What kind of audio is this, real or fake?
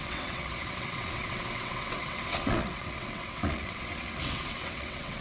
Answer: fake